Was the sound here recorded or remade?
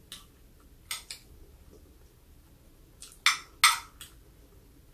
recorded